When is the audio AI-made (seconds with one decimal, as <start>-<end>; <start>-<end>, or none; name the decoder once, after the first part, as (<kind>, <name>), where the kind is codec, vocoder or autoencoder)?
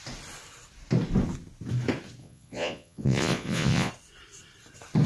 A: 2.2-3.9 (vocoder, Vocos)